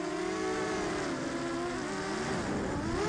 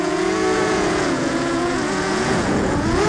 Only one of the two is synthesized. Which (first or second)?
second